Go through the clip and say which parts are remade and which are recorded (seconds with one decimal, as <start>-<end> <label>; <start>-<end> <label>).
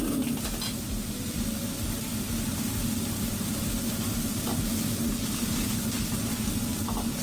0.0-7.2 recorded